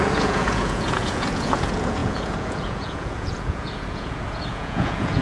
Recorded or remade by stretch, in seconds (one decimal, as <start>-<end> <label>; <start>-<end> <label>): 0.0-5.2 remade